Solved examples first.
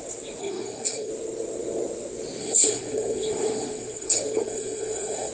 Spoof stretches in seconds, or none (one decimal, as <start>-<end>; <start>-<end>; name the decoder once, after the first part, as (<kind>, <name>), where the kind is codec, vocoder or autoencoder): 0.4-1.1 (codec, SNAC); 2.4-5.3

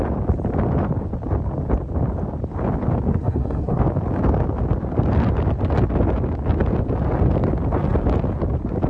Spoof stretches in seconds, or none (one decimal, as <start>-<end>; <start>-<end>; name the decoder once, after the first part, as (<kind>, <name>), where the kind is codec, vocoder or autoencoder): 3.1-3.8 (codec, SNAC)

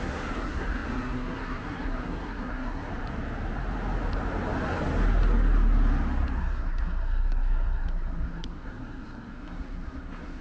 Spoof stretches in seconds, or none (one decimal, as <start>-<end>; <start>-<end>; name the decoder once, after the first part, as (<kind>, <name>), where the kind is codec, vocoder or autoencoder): 0.0-2.9 (codec, SNAC); 6.4-10.4

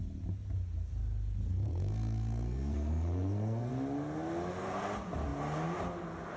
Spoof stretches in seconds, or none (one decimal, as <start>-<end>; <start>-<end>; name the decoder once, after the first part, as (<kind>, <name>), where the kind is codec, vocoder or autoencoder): 1.5-3.7 (codec, SNAC)

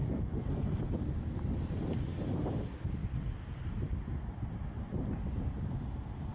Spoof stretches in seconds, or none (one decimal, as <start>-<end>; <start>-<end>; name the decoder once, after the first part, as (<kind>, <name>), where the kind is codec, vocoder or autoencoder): 0.0-0.8 (codec, SNAC)

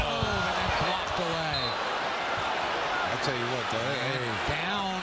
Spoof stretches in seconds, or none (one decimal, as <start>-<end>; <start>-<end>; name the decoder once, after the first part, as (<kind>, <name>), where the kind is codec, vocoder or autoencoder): none

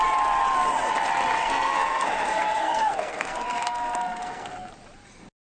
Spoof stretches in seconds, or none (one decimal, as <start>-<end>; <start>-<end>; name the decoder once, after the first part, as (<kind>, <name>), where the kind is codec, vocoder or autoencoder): 1.4-4.7 (codec, SNAC)